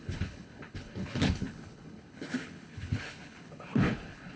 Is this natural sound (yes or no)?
no